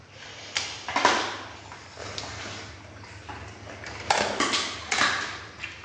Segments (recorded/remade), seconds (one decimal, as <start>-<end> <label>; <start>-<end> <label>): 0.0-5.8 recorded